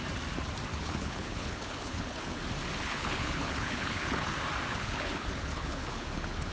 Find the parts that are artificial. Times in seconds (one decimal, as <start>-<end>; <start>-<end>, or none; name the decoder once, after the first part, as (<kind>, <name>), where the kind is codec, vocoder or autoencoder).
0.7-2.4 (codec, HILCodec); 2.8-4.3; 4.7-6.5